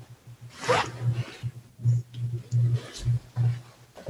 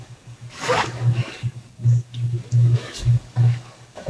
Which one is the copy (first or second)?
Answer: second